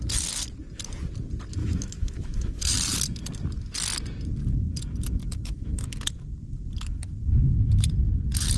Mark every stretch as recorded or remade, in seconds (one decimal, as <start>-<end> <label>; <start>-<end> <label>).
0.0-1.6 recorded; 1.6-2.7 remade; 2.7-5.2 recorded; 5.2-6.0 remade; 6.0-8.6 recorded